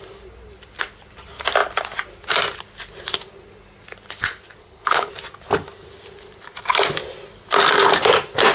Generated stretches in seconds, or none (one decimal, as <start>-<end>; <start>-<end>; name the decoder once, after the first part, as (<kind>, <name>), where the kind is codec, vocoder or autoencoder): 4.6-5.1 (codec, HILCodec)